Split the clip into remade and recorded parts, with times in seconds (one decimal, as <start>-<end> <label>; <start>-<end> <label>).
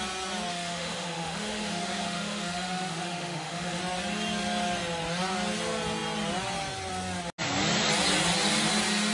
0.0-0.5 recorded; 0.5-3.8 remade; 3.8-9.1 recorded